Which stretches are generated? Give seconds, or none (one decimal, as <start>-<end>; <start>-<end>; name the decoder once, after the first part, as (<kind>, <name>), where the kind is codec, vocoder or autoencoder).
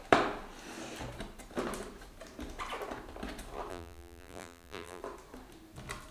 3.7-5.0 (vocoder, BigVGAN v2)